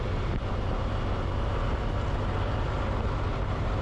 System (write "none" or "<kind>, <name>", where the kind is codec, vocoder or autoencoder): none